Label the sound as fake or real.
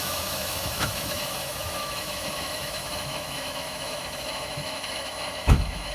fake